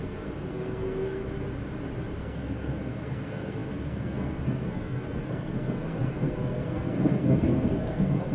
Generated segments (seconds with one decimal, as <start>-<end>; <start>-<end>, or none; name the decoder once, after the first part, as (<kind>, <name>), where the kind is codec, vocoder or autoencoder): 0.0-1.2 (codec, SNAC); 2.2-8.3